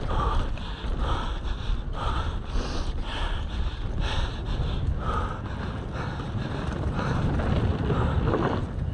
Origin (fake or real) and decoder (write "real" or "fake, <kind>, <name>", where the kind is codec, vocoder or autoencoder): real